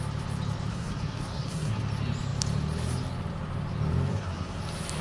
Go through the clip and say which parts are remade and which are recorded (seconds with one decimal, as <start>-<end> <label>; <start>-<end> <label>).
0.0-0.7 recorded; 0.7-1.8 remade; 1.8-4.1 recorded; 4.1-4.6 remade; 4.6-5.0 recorded